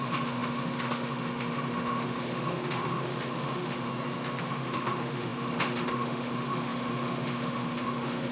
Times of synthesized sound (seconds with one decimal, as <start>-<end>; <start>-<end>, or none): 0.0-3.9; 4.4-8.3